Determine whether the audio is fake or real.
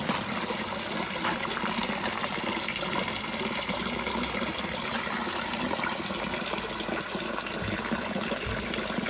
real